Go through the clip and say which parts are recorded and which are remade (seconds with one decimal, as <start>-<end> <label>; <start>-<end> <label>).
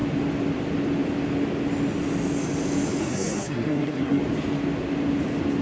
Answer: 0.0-3.0 recorded; 3.0-4.2 remade; 4.2-5.6 recorded